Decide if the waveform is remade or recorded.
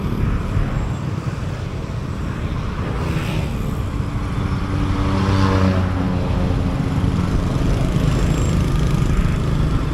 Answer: recorded